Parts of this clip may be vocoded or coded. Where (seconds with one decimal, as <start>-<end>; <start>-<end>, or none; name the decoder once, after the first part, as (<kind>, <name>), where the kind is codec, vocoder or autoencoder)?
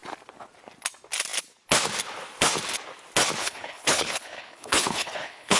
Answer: 3.4-5.6 (codec, HILCodec)